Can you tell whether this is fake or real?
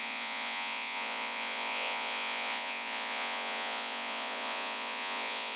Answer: fake